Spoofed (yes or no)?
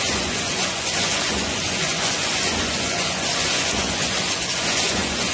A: yes